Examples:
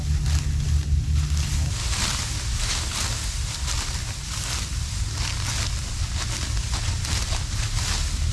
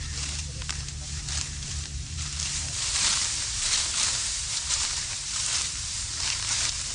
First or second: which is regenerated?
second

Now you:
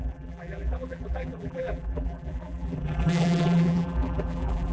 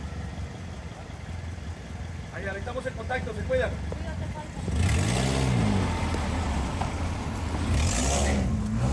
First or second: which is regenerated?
first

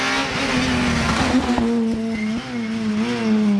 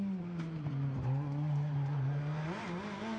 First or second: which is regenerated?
second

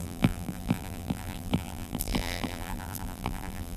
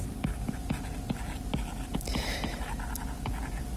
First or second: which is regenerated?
first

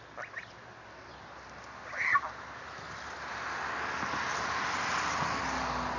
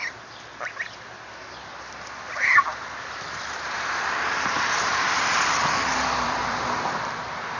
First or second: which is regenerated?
second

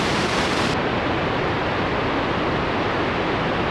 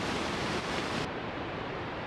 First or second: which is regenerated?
second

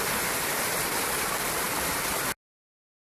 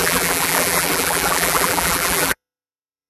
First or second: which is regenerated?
second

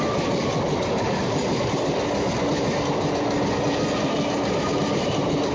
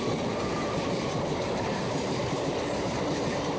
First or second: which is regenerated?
second